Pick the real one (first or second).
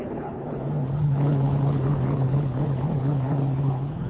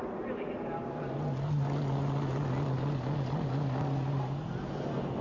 second